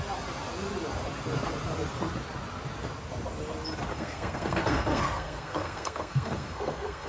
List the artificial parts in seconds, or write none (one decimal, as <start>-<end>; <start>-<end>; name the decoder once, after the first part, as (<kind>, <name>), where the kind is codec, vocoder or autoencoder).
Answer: 3.9-7.1 (codec, SNAC)